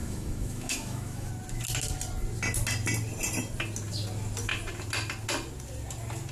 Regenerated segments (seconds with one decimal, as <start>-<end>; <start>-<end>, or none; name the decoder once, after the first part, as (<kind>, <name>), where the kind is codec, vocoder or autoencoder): 0.0-1.3 (autoencoder, DAC-VAE)